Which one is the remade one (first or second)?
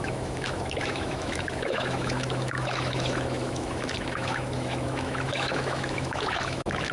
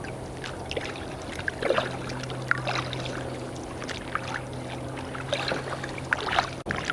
first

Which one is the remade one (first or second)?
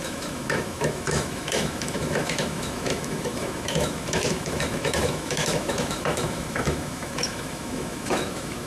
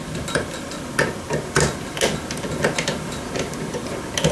first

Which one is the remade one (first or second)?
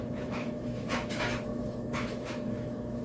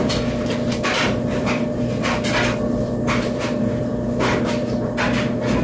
first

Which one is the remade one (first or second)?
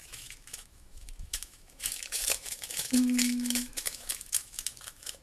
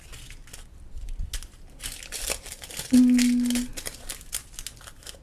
first